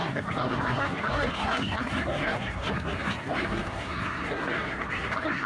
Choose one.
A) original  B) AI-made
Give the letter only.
B